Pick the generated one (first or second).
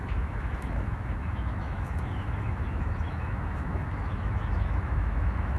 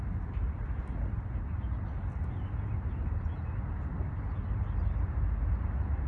first